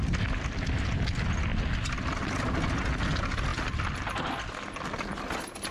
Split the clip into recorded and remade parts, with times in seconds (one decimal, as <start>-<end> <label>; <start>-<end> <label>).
0.0-5.7 recorded